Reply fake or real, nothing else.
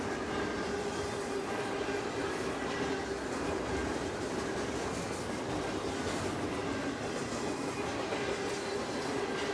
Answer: real